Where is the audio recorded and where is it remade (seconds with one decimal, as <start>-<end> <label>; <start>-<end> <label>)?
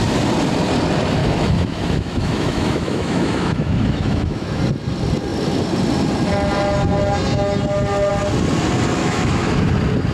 0.0-1.2 recorded; 1.2-4.6 remade; 4.6-9.0 recorded; 9.0-9.7 remade; 9.7-10.1 recorded